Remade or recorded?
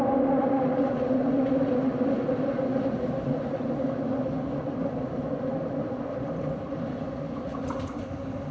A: recorded